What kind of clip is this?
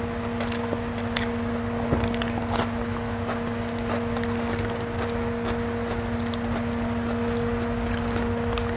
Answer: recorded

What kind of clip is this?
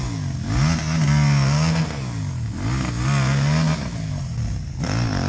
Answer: recorded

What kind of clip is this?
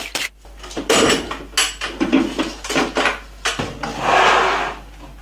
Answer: recorded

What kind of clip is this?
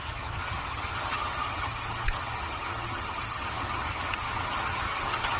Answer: remade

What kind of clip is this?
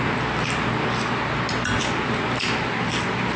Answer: recorded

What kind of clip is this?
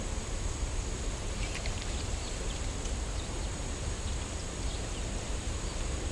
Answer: remade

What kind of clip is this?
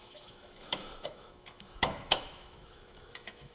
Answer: remade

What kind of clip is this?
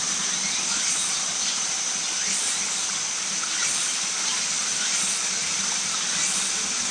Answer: recorded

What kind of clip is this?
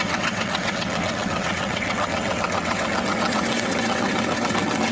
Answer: remade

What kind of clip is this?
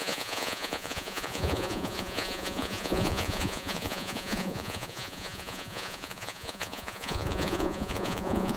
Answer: remade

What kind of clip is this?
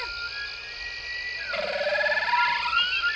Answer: recorded